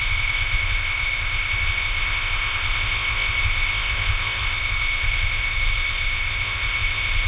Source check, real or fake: fake